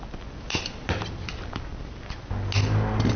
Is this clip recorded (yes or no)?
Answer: yes